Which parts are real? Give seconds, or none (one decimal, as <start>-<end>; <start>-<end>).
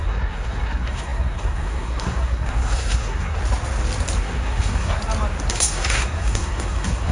3.4-4.2; 5.0-5.5